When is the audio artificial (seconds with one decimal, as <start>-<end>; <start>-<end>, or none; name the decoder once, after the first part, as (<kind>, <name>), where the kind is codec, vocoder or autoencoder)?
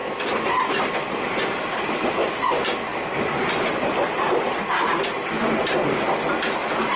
none